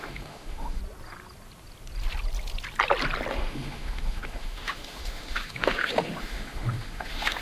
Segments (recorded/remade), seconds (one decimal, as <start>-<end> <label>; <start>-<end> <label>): 0.0-0.8 remade; 0.8-3.3 recorded; 3.3-7.4 remade